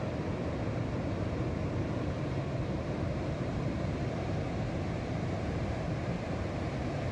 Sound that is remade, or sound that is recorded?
remade